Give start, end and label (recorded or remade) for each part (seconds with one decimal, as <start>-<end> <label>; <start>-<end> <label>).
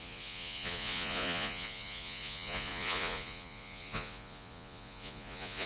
0.0-5.7 remade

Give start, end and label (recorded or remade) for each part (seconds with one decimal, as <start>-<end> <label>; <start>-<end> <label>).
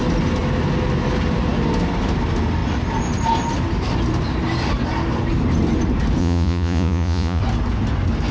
0.0-6.2 recorded; 6.2-7.4 remade; 7.4-8.3 recorded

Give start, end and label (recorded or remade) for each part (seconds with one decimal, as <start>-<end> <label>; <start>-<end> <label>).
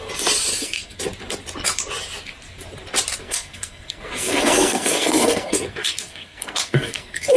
0.0-0.5 recorded; 0.5-1.0 remade; 1.0-3.2 recorded; 3.2-7.4 remade